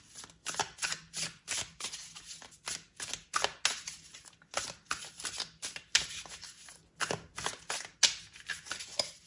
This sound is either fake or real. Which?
real